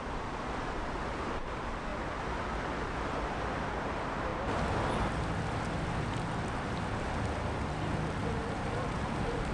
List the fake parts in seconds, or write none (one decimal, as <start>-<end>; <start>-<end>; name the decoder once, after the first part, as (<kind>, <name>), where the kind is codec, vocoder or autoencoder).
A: 0.0-1.9 (vocoder, BigVGAN v2); 2.8-4.3; 8.3-9.5